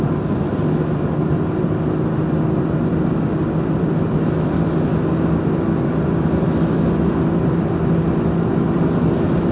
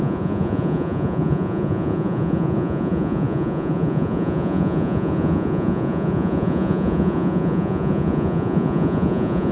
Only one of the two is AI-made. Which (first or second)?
second